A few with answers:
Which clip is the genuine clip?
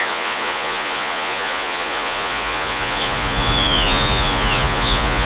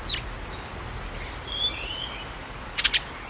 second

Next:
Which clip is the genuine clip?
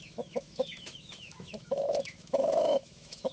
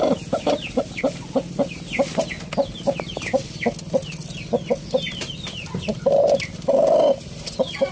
second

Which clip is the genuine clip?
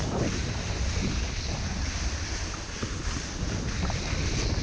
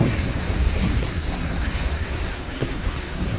first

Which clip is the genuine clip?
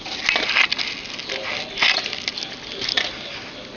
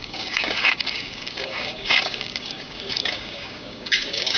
first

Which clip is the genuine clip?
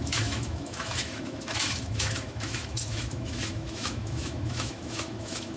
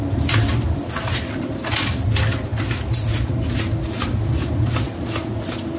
second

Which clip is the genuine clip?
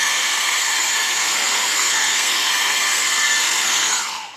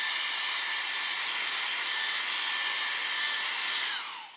second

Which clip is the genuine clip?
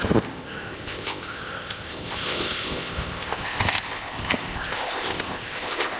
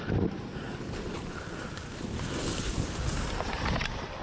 second